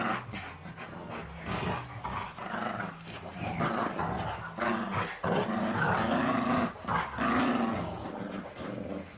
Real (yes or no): yes